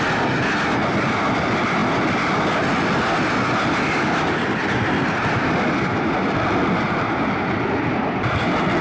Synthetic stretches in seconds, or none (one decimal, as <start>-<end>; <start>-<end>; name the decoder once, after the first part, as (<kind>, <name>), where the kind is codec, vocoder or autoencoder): none